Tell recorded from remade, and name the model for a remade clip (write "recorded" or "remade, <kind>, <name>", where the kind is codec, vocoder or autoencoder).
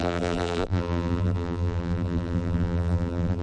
remade, vocoder, BigVGAN v2